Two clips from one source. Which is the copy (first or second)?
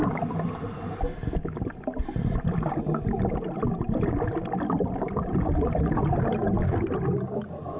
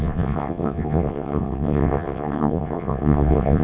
second